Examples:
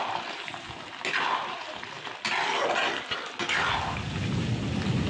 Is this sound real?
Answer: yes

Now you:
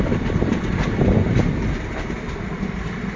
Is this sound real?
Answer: yes